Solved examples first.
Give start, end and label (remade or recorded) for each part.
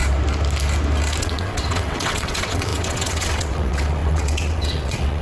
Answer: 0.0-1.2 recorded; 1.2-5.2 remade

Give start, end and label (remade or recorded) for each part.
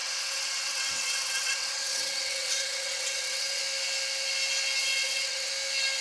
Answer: 0.0-3.6 remade; 3.6-4.8 recorded; 4.8-5.5 remade; 5.5-6.0 recorded